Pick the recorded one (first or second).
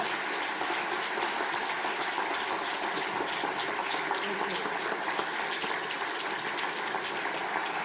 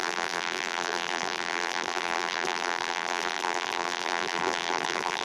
first